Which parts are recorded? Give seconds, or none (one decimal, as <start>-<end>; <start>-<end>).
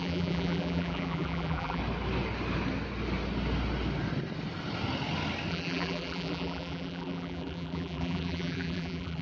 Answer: 1.8-5.5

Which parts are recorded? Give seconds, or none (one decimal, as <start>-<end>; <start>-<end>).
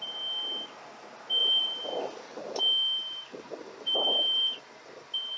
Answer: 0.0-1.4; 2.6-3.0; 4.6-5.4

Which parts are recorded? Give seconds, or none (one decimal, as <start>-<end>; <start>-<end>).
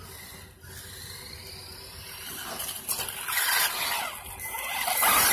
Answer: 0.0-1.6; 2.4-5.3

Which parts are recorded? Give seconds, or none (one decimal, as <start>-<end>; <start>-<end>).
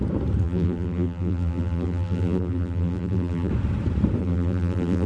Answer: 0.0-0.4; 3.5-4.2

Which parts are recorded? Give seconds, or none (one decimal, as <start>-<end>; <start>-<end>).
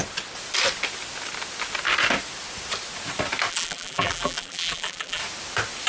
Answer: 0.0-3.5; 5.2-5.9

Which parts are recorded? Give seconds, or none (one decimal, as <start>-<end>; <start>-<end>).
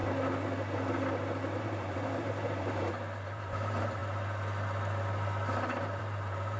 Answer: 0.0-1.6; 4.0-6.0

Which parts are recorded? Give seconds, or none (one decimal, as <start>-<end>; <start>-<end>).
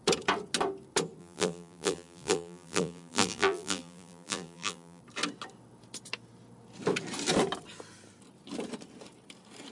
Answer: 0.0-1.2; 5.0-9.7